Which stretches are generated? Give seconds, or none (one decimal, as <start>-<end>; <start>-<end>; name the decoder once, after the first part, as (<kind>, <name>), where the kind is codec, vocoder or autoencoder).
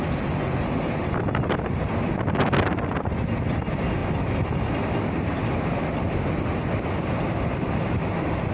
none